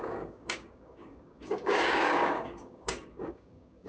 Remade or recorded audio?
remade